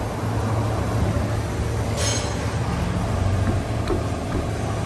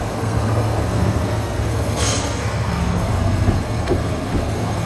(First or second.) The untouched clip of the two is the first